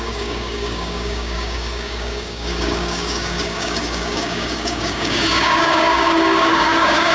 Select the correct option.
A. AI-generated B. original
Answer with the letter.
A